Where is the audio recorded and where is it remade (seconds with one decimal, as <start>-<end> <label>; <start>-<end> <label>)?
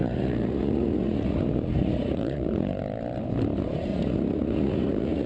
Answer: 0.0-2.8 remade; 2.8-3.9 recorded; 3.9-5.3 remade